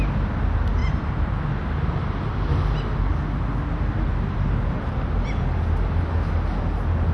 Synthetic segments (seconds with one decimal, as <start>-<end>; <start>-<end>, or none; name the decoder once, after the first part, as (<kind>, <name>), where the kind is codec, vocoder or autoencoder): 0.8-1.4 (vocoder, BigVGAN v2)